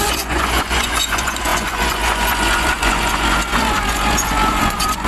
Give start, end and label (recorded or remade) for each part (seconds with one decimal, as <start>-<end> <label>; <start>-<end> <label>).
0.0-5.1 remade